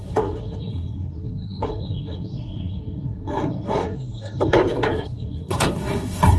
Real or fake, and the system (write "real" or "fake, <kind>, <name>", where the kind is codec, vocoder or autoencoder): fake, codec, SNAC